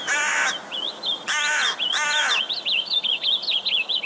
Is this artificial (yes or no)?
no